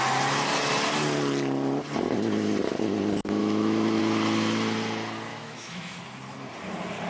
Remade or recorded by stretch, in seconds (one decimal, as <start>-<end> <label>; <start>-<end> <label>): 0.0-3.4 recorded; 3.4-4.0 remade; 4.0-5.3 recorded; 5.3-6.0 remade; 6.0-7.1 recorded